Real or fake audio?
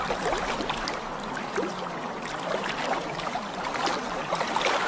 fake